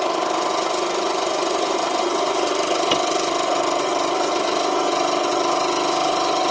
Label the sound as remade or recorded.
recorded